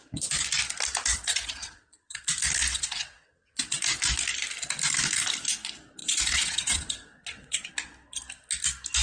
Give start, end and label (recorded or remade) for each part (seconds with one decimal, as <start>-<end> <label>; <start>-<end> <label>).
0.0-1.1 recorded; 1.1-2.3 remade; 2.3-2.7 recorded; 2.7-3.8 remade; 3.8-6.0 recorded; 6.0-7.7 remade; 7.7-9.0 recorded